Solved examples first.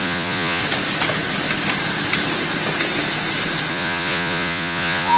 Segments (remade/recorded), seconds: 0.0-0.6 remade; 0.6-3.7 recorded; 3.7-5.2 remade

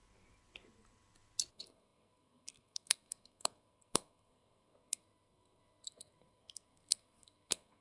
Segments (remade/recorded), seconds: 0.0-1.5 recorded; 1.5-7.8 remade